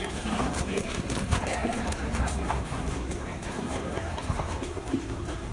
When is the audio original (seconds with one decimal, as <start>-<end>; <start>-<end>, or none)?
none